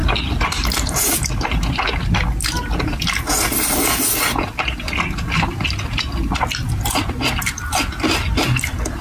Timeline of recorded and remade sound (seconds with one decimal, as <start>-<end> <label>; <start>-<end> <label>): 0.0-1.9 remade; 1.9-9.0 recorded